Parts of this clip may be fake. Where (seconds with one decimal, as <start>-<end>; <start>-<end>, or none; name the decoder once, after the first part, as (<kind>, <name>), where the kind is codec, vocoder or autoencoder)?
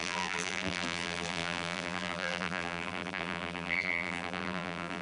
0.0-5.0 (vocoder, BigVGAN v2)